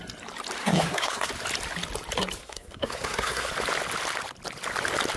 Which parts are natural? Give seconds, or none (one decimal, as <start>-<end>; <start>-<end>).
0.0-0.6; 1.3-2.4; 3.5-5.2